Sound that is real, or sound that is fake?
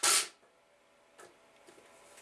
real